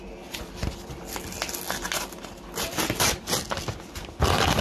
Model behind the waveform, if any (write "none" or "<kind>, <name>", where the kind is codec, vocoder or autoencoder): none